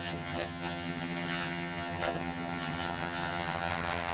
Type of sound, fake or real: fake